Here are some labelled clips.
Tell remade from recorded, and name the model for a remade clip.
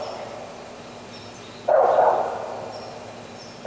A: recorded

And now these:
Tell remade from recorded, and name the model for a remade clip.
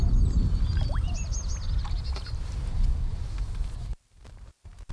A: recorded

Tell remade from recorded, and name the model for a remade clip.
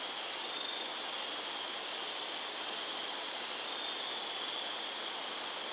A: recorded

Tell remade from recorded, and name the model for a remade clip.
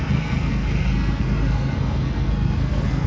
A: remade, codec, SNAC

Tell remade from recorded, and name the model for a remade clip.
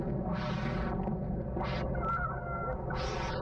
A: recorded